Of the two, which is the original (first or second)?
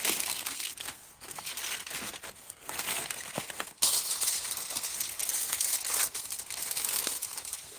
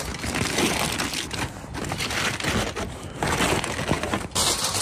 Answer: second